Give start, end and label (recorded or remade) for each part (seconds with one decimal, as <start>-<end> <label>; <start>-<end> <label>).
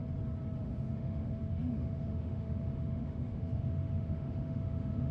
0.0-0.6 recorded; 0.6-5.1 remade